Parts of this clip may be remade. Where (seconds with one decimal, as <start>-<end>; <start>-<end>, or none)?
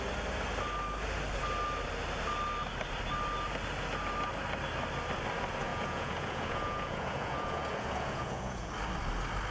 5.7-8.7